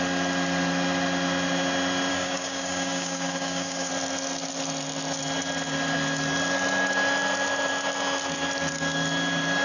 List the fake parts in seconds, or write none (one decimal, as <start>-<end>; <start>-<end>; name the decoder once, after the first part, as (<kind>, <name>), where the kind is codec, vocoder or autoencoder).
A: 2.1-3.9 (codec, DAC)